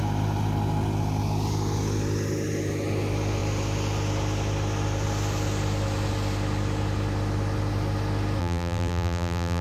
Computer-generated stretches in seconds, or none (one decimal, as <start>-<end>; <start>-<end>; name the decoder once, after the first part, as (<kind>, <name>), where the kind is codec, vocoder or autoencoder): 8.4-9.6 (vocoder, BigVGAN v2)